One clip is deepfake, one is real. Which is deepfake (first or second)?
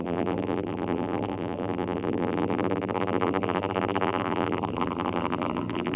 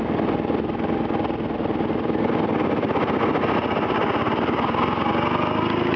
first